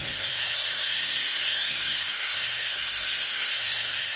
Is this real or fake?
fake